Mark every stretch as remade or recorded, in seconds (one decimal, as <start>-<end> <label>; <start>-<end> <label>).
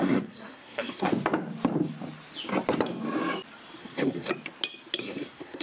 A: 0.0-1.1 remade; 1.1-3.8 recorded; 3.8-4.3 remade; 4.3-5.0 recorded; 5.0-5.6 remade